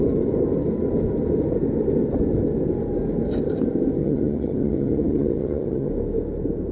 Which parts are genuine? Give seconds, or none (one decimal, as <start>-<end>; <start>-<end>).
0.0-4.0; 5.9-6.7